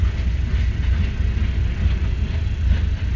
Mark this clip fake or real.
real